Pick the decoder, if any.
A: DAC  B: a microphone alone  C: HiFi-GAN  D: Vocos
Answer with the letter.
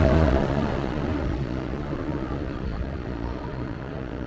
D